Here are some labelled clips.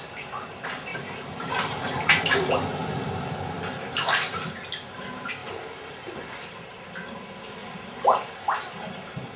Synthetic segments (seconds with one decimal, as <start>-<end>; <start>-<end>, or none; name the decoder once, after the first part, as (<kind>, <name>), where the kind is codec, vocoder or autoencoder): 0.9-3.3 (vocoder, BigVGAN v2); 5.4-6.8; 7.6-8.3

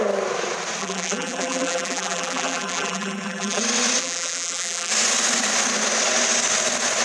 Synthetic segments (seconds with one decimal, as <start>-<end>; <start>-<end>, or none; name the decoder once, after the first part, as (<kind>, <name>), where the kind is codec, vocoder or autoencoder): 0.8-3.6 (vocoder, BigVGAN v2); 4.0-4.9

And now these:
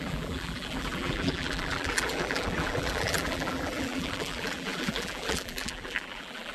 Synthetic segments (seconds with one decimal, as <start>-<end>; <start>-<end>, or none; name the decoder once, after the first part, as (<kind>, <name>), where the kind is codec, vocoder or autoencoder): 0.0-6.5 (vocoder, BigVGAN v2)

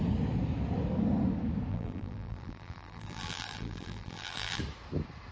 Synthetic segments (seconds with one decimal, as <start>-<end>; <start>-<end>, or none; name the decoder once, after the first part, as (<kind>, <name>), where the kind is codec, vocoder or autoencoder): 1.7-4.6 (vocoder, BigVGAN v2)